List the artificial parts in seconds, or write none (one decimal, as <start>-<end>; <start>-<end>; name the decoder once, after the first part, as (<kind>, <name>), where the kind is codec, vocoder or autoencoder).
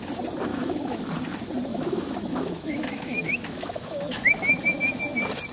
0.5-1.1 (autoencoder, DAC-VAE); 1.7-5.0